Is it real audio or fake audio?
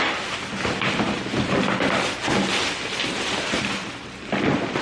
real